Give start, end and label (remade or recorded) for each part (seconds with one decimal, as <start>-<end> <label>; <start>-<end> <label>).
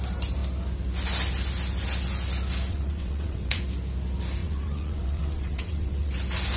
0.0-2.7 recorded; 2.7-3.6 remade; 3.6-4.4 recorded; 4.4-6.1 remade; 6.1-6.6 recorded